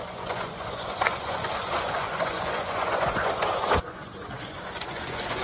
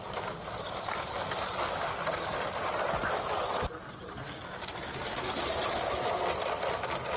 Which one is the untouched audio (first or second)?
second